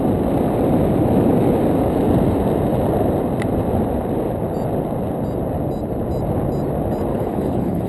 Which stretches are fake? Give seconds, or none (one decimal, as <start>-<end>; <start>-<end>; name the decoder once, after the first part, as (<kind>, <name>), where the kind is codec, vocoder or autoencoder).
7.1-7.9 (codec, HILCodec)